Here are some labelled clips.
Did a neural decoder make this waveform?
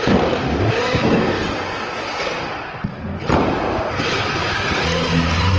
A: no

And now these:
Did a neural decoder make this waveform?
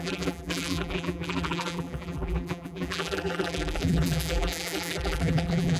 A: yes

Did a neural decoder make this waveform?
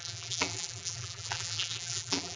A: yes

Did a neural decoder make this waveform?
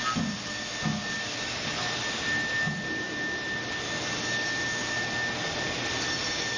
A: no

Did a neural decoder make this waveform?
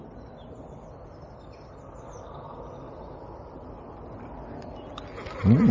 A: no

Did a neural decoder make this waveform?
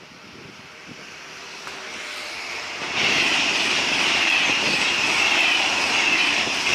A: yes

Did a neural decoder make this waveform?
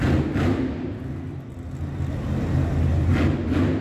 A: no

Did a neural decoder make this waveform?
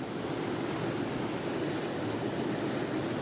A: no